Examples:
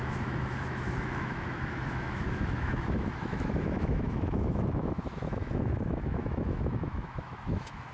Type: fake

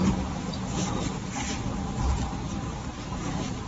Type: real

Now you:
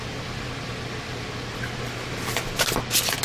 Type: real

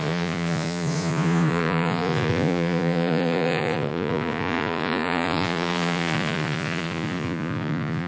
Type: fake